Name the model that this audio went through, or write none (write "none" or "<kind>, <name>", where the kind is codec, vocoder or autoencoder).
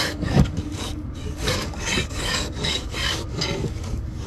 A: codec, DAC